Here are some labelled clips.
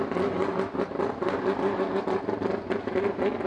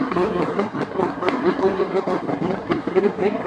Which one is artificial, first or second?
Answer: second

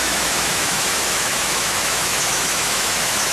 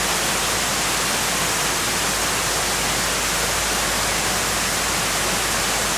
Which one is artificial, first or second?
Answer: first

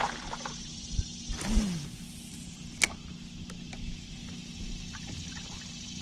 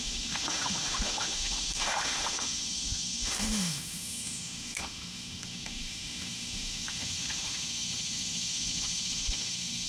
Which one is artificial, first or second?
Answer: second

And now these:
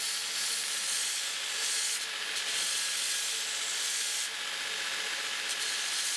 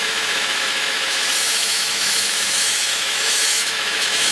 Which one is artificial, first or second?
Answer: second